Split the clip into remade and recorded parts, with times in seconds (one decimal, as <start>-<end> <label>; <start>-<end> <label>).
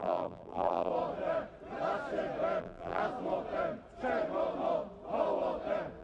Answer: 0.0-0.9 remade; 0.9-2.6 recorded; 2.6-3.0 remade; 3.0-6.0 recorded